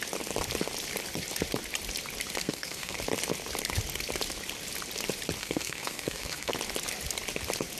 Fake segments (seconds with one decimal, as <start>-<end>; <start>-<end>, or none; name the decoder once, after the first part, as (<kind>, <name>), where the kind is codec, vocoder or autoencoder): 2.4-3.0 (codec, SNAC); 5.4-6.5